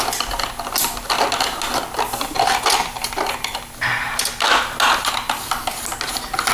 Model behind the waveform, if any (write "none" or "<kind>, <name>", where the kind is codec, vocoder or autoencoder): none